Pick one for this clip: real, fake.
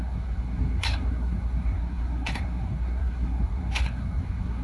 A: fake